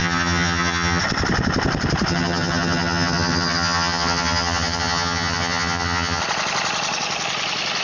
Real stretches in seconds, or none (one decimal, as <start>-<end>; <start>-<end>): 1.0-2.1; 6.2-7.8